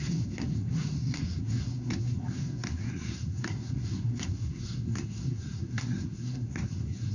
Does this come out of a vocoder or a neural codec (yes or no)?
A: yes